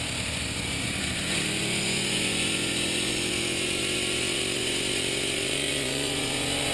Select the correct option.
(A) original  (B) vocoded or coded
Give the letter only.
B